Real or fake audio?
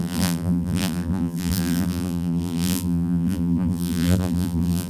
fake